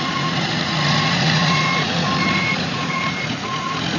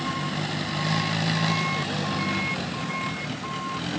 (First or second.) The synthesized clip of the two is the first